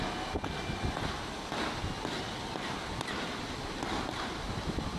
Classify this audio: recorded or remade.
recorded